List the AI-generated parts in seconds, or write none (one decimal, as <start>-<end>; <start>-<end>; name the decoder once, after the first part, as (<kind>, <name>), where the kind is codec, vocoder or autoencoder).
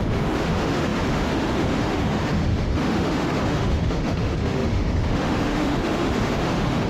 0.0-6.9 (autoencoder, DAC-VAE)